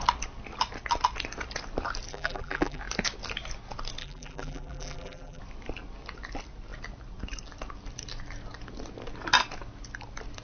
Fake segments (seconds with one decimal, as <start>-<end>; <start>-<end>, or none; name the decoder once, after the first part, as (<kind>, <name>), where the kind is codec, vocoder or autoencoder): 2.1-2.8 (vocoder, BigVGAN v2); 4.0-5.4